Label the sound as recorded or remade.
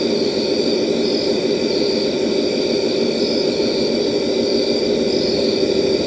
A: recorded